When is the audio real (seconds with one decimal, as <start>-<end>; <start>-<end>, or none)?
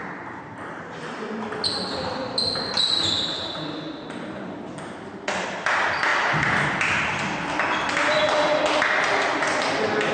0.0-10.1